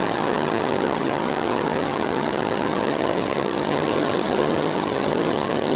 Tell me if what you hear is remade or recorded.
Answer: remade